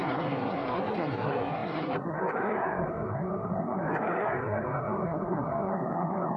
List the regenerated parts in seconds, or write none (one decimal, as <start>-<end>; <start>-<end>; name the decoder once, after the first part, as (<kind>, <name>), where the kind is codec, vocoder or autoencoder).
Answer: 0.0-6.4 (codec, SNAC)